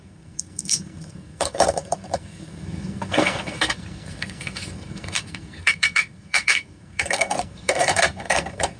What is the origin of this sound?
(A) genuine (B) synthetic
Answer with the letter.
B